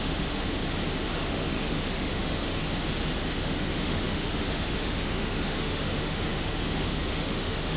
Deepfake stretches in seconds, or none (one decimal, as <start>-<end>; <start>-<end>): 0.0-0.6; 1.1-2.6; 3.3-7.8